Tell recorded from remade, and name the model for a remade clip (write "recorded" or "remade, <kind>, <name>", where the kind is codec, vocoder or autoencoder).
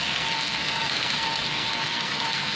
remade, codec, SNAC